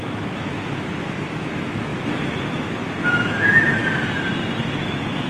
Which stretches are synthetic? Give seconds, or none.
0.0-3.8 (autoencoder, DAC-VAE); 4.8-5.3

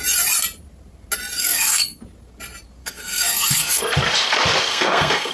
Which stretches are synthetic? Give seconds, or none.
1.4-2.0 (codec, SNAC); 2.8-3.8; 4.7-5.3

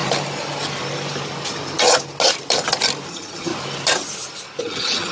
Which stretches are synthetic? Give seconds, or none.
3.1-3.5 (vocoder, HiFi-GAN); 4.6-5.1

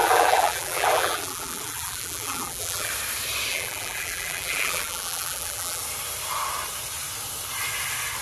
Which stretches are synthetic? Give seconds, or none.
0.0-2.9 (vocoder, BigVGAN v2); 3.5-5.8

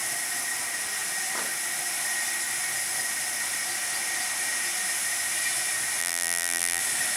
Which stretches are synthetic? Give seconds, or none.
6.0-6.8 (vocoder, BigVGAN v2)